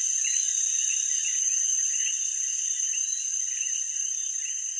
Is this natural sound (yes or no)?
yes